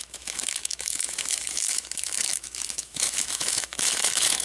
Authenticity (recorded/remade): remade